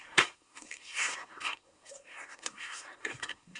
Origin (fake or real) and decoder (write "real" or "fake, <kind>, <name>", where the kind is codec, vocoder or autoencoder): fake, codec, SNAC